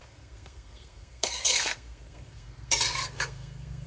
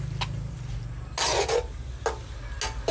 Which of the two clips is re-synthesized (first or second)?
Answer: first